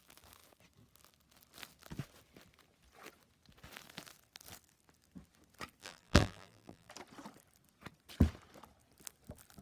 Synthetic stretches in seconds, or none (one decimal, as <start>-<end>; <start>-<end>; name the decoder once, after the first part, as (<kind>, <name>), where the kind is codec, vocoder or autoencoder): 5.8-6.9 (vocoder, BigVGAN v2)